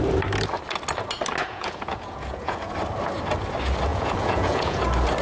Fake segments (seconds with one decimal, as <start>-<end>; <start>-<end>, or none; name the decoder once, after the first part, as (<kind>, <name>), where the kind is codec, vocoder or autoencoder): 1.4-2.7 (vocoder, Vocos); 3.9-4.8